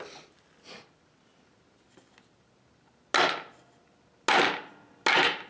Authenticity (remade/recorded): recorded